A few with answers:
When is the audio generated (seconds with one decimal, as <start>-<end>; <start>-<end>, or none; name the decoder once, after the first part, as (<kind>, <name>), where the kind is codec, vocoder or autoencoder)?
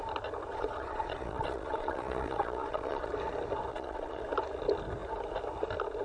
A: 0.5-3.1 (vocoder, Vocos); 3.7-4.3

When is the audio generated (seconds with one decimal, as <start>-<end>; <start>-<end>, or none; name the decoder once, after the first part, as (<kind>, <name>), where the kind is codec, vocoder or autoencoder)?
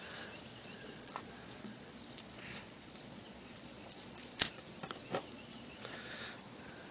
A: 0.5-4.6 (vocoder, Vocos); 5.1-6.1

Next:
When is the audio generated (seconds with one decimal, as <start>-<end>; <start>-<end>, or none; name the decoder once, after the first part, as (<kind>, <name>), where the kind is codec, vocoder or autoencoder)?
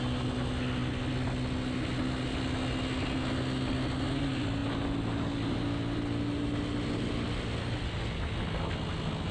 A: none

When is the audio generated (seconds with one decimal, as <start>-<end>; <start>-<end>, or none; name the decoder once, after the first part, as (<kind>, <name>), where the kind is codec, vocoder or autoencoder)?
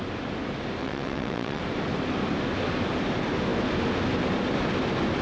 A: 0.8-1.6 (vocoder, WaveNeXt)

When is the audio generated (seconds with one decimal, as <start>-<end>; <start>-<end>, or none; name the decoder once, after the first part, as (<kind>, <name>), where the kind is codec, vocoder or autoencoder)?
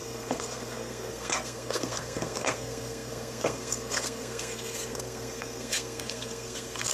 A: 0.0-6.9 (codec, SNAC)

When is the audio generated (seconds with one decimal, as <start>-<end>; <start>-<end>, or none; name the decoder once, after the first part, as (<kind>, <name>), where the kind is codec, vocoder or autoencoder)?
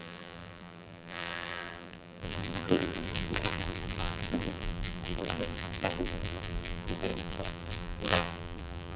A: 0.0-9.0 (vocoder, BigVGAN v2)